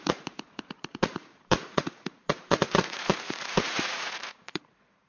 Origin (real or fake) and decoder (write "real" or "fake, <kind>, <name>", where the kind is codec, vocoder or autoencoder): fake, vocoder, Vocos